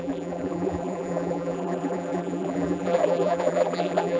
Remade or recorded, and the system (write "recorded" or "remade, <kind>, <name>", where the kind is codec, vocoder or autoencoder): remade, vocoder, BigVGAN v2